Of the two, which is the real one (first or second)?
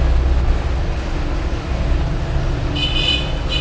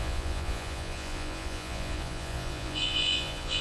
first